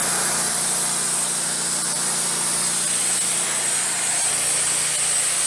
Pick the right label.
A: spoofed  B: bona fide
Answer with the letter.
B